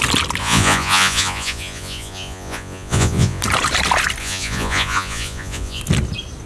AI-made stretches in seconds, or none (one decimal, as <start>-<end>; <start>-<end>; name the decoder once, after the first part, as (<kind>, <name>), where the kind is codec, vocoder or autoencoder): 0.4-3.4 (vocoder, Vocos); 4.2-5.8